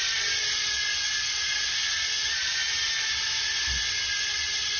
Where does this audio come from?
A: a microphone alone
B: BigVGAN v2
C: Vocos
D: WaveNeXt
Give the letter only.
A